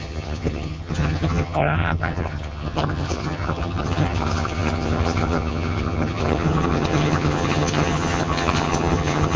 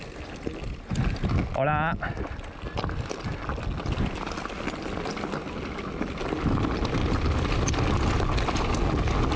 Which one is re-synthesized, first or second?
first